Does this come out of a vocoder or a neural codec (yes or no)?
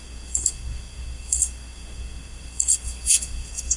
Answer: yes